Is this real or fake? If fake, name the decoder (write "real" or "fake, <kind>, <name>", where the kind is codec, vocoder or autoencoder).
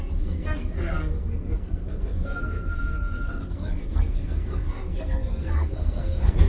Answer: fake, codec, SNAC